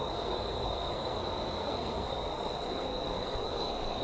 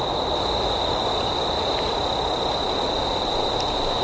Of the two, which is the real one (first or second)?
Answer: second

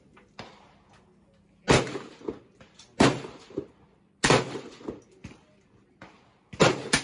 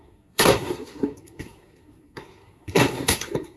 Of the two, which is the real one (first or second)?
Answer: first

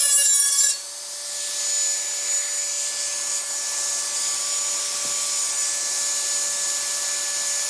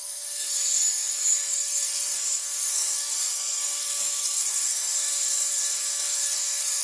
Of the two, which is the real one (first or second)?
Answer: first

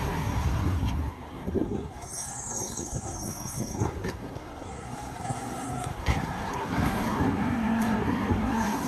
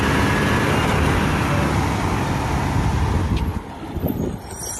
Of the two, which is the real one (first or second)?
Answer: second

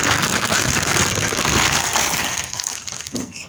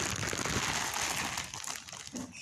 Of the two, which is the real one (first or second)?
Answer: second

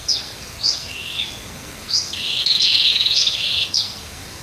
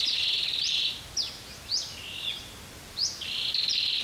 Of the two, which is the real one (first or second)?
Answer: second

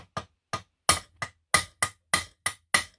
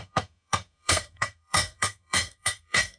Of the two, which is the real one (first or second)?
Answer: first